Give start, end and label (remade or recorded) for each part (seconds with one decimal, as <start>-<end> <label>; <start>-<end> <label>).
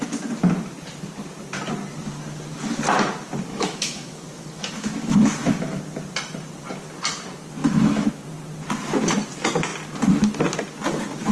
0.0-3.5 recorded; 3.5-5.8 remade; 5.8-7.6 recorded; 7.6-8.1 remade; 8.1-11.3 recorded